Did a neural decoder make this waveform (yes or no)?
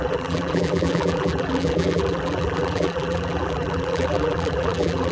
yes